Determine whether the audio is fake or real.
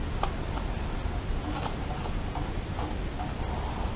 real